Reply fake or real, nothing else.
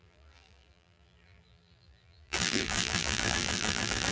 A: fake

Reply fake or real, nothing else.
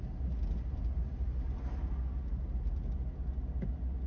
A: real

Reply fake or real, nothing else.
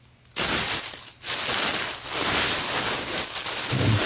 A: real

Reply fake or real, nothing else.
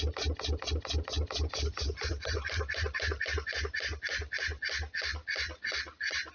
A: real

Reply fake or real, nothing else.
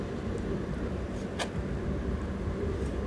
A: real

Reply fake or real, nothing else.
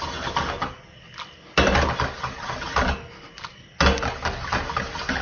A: real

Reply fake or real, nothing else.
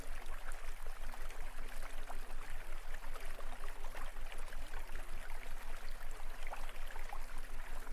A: real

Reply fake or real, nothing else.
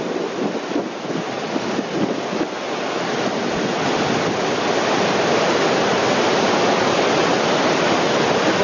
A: real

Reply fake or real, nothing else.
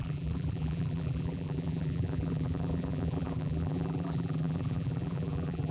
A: fake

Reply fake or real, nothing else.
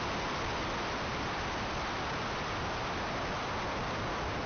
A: fake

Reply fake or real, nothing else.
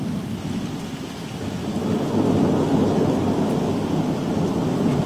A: real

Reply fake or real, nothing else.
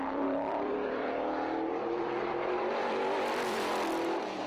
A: fake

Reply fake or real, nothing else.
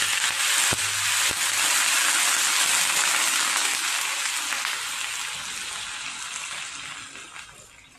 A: real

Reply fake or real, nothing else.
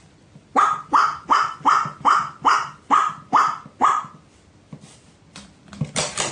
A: fake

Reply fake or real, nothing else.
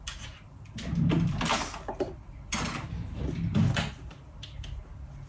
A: real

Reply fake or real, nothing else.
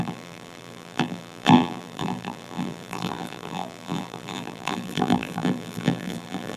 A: fake